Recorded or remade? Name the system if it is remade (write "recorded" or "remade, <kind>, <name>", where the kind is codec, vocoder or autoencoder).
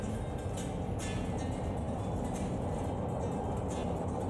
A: recorded